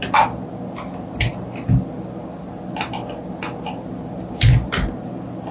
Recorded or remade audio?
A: recorded